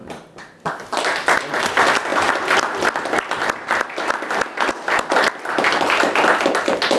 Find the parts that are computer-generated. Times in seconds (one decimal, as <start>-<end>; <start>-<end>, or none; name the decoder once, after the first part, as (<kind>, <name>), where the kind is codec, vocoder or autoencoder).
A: none